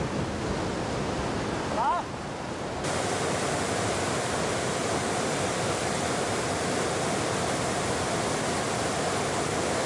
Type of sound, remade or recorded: recorded